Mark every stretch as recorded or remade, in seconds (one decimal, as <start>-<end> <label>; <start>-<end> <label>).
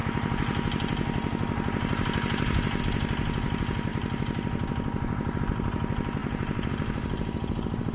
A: 0.0-7.9 recorded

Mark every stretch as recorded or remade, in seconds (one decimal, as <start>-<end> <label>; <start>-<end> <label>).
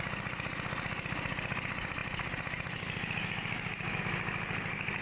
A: 0.0-5.0 recorded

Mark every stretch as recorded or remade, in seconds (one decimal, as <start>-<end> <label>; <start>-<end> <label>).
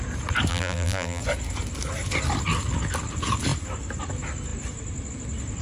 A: 0.0-0.5 recorded; 0.5-1.2 remade; 1.2-5.6 recorded